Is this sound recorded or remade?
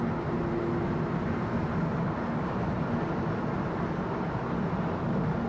recorded